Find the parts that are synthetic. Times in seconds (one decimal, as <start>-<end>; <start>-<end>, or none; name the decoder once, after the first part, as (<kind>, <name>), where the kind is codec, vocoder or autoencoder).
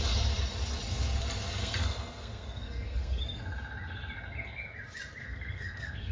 1.6-3.2 (codec, SNAC); 5.2-6.1